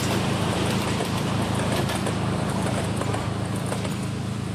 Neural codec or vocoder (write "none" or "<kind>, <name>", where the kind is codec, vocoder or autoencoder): vocoder, BigVGAN v2